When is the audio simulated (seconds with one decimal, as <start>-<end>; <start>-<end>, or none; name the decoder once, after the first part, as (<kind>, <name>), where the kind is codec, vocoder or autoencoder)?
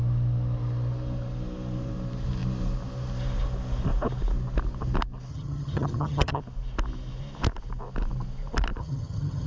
5.3-6.4 (vocoder, HiFi-GAN); 8.8-9.5